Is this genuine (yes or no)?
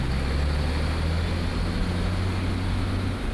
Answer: yes